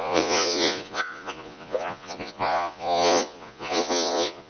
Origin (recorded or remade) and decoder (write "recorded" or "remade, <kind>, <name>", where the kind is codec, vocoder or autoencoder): remade, vocoder, Vocos